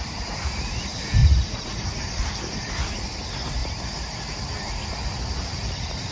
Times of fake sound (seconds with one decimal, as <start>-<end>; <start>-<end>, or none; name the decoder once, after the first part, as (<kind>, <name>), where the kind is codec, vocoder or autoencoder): 1.2-2.0 (vocoder, Vocos)